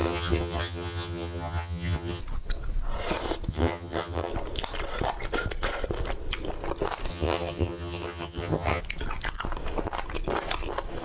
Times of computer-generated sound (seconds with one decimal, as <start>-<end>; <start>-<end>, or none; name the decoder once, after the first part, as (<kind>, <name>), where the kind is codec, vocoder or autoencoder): 0.0-2.2 (vocoder, HiFi-GAN); 3.5-4.3; 7.1-8.8